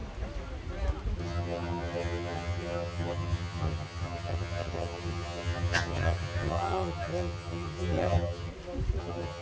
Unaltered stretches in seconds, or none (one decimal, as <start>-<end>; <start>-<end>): 0.0-1.2; 8.5-9.0